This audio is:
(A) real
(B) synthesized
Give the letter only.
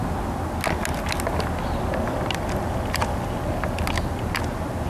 A